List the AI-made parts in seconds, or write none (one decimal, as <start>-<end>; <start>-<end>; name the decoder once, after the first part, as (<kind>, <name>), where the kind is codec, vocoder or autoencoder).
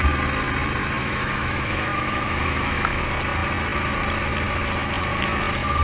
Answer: 1.0-3.0 (autoencoder, DAC-VAE)